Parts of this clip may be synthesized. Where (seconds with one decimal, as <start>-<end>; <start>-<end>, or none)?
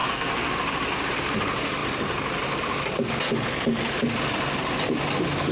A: 0.0-0.5